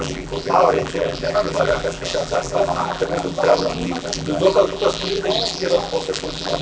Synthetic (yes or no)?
yes